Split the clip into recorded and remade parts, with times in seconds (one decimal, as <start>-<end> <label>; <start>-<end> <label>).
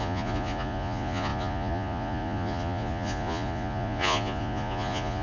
0.0-5.2 remade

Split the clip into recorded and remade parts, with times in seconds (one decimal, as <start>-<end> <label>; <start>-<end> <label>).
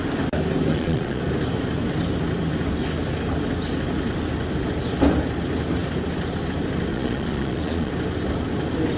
0.0-0.7 recorded; 0.7-1.2 remade; 1.2-6.9 recorded; 6.9-7.9 remade; 7.9-9.0 recorded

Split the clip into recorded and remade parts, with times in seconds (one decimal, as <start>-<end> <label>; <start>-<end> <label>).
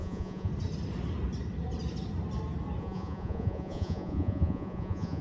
0.0-0.5 remade; 0.5-2.8 recorded; 2.8-5.2 remade